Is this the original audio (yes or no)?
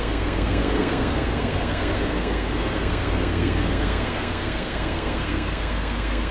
no